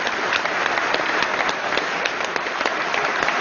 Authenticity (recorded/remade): recorded